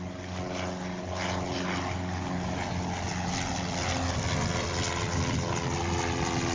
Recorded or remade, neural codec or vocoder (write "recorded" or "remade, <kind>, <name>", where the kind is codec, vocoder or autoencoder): recorded